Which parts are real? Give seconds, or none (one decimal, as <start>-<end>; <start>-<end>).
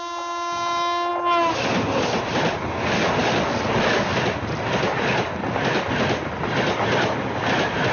0.0-7.9